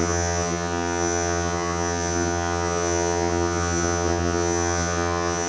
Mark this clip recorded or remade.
remade